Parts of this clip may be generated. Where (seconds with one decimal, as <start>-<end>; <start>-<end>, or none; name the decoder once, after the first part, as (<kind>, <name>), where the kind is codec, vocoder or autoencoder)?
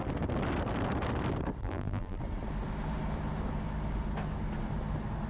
1.6-2.2 (vocoder, BigVGAN v2)